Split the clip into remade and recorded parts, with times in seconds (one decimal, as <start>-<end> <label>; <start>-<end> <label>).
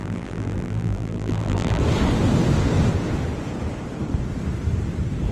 0.0-1.8 remade; 1.8-5.3 recorded